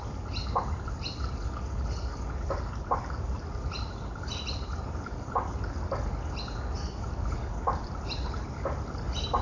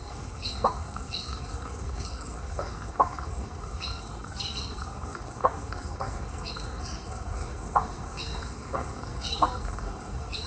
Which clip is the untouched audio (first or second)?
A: first